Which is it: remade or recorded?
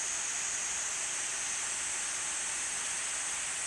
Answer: recorded